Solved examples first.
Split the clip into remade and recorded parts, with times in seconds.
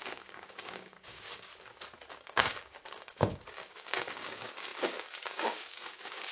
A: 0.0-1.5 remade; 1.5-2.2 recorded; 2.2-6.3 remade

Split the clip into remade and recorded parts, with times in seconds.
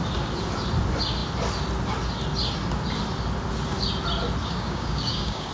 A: 0.0-4.4 recorded; 4.4-5.5 remade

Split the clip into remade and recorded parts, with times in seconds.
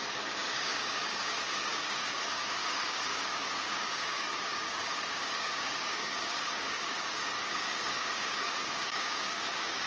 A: 0.0-9.9 remade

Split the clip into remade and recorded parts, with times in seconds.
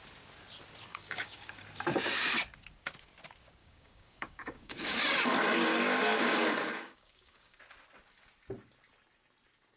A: 0.0-0.9 recorded; 0.9-1.6 remade; 1.6-3.6 recorded; 3.6-7.6 remade; 7.6-9.8 recorded